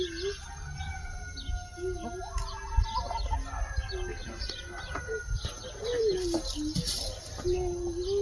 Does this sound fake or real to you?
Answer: real